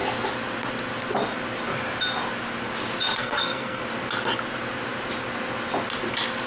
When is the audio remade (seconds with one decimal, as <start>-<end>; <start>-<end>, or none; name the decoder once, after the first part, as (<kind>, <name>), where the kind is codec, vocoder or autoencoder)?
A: 3.2-3.8 (codec, SNAC)